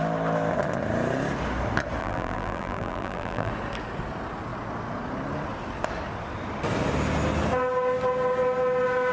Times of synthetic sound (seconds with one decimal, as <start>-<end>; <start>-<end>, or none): 2.0-3.5